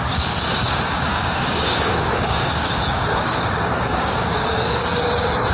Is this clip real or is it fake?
fake